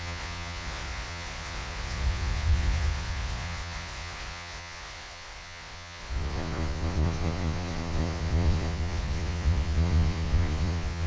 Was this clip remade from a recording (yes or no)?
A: yes